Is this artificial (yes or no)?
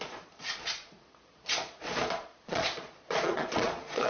yes